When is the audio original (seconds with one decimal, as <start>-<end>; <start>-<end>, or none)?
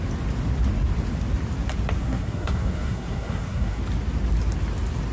0.0-2.0; 3.8-5.1